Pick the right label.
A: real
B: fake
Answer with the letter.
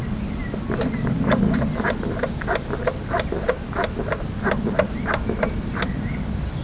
A